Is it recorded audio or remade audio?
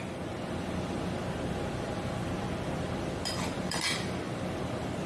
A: remade